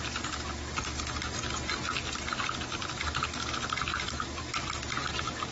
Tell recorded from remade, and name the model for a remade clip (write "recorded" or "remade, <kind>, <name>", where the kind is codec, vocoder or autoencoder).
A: recorded